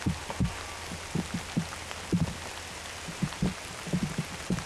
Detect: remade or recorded recorded